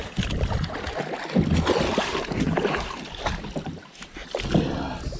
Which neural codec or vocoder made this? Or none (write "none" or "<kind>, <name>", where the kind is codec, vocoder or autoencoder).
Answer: none